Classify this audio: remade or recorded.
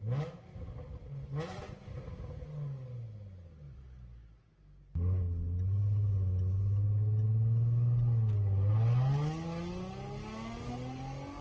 recorded